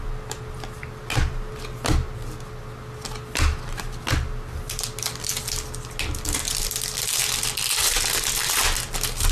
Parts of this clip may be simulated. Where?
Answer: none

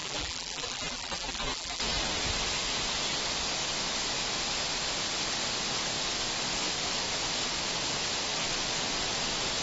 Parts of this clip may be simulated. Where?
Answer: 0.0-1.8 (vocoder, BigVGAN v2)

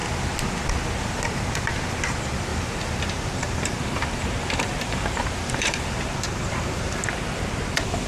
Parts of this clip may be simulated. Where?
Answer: 2.5-7.4 (vocoder, BigVGAN v2)

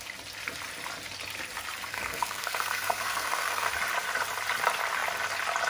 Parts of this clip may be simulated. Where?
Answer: 1.9-3.7 (codec, SNAC)

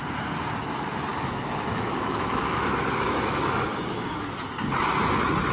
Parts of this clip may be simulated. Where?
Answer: 1.1-4.2 (autoencoder, DAC-VAE)

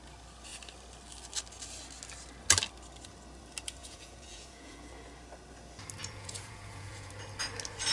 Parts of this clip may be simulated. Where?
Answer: 3.8-4.9 (vocoder, Vocos); 6.0-7.1

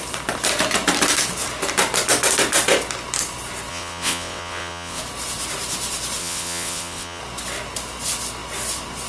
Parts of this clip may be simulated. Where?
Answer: 3.7-5.0 (vocoder, WaveNeXt); 6.2-7.2

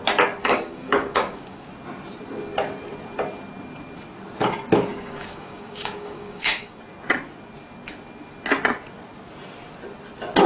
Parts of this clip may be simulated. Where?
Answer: 0.4-1.7 (codec, DAC); 4.9-6.8